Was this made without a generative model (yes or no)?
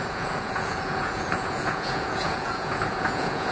no